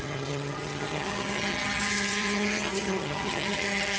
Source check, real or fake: fake